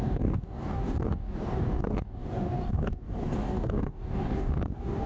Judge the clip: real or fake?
fake